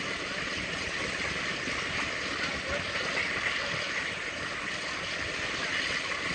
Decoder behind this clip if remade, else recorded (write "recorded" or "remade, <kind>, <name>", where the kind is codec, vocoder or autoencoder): recorded